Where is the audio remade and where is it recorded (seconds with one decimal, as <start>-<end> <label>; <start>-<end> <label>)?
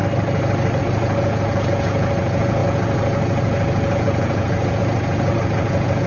0.0-0.8 recorded; 0.8-6.1 remade